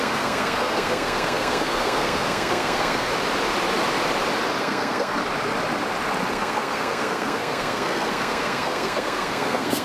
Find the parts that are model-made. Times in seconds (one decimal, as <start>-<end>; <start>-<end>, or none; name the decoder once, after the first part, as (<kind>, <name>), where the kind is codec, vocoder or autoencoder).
0.0-3.1 (codec, SNAC); 4.6-5.2; 6.3-9.8